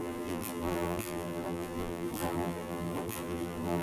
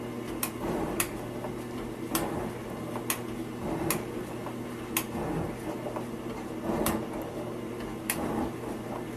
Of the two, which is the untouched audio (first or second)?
second